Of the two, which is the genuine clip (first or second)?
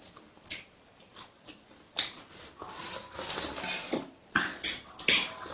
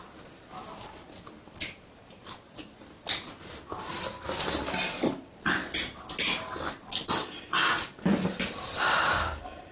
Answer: second